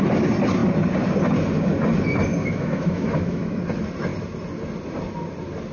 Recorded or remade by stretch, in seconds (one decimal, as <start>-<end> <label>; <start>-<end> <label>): 0.0-2.4 recorded; 2.4-3.6 remade; 3.6-5.7 recorded